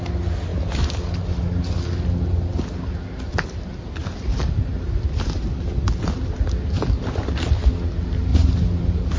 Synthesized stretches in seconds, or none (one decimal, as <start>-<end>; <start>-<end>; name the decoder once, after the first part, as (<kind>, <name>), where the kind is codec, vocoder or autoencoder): 8.3-9.2 (vocoder, BigVGAN v2)